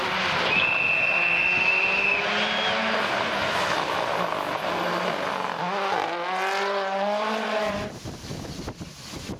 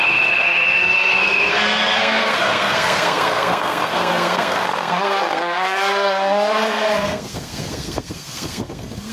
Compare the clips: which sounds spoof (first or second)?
second